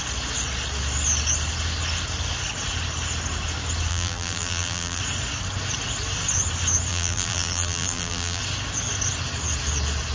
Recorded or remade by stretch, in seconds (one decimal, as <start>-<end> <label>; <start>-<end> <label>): 0.0-3.9 recorded; 3.9-5.0 remade; 5.0-6.9 recorded; 6.9-8.4 remade; 8.4-10.1 recorded